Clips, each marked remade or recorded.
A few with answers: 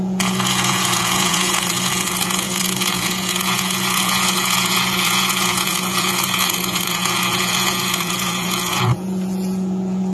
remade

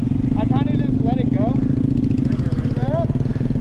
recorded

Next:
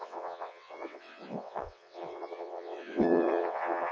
remade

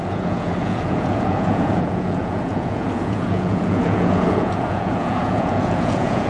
remade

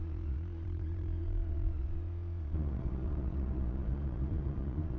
remade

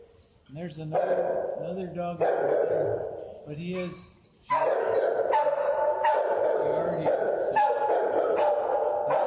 recorded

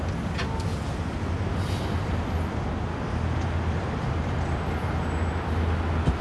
recorded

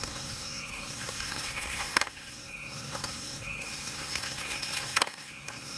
remade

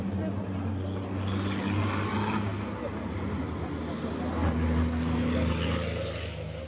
recorded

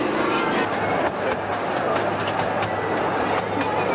recorded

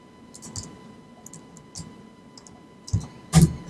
recorded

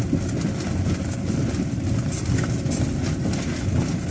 recorded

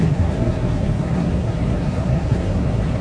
remade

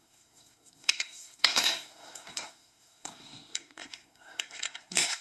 remade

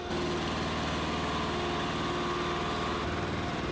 recorded